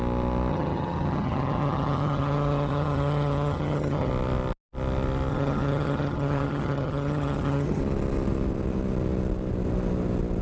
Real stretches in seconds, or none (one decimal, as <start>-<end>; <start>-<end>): 0.0-0.5; 4.1-5.3; 7.8-10.4